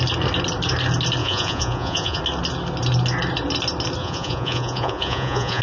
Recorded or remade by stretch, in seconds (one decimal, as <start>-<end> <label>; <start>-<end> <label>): 0.0-1.2 recorded; 1.2-2.2 remade; 2.2-4.0 recorded; 4.0-5.6 remade